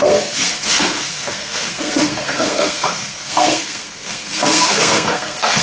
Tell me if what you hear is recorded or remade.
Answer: remade